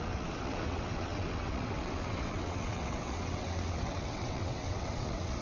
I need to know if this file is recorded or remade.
remade